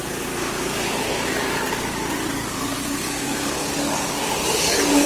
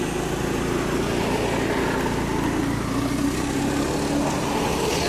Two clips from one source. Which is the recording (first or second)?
second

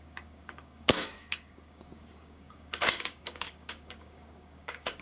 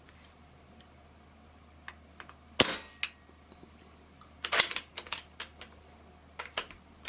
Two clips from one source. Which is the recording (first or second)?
second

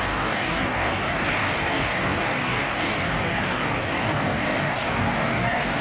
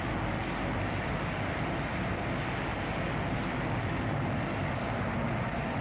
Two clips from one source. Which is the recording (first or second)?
second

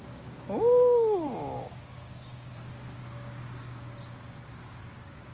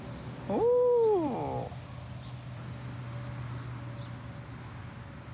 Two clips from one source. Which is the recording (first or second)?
second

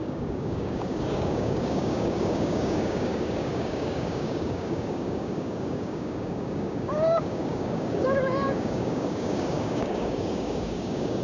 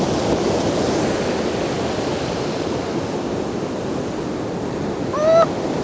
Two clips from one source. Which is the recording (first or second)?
second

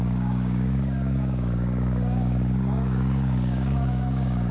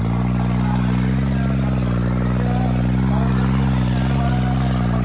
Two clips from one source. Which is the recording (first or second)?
second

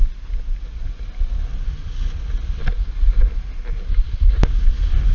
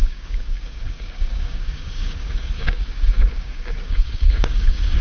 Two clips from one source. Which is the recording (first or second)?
first